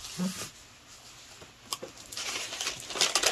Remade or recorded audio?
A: recorded